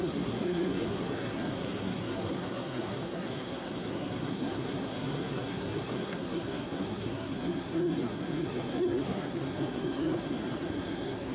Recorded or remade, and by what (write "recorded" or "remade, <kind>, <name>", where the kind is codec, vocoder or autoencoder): remade, codec, SNAC